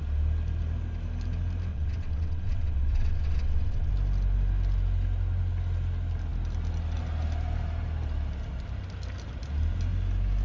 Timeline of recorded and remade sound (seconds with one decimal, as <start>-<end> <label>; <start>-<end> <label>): 0.0-1.7 recorded; 1.7-3.9 remade; 3.9-10.4 recorded